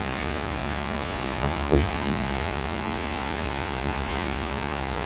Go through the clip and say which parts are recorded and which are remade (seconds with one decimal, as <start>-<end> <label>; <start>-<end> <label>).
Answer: 0.0-5.1 remade